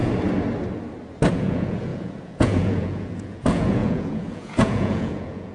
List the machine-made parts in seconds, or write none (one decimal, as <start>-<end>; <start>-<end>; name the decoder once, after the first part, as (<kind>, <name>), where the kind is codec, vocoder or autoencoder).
1.3-5.5 (vocoder, Vocos)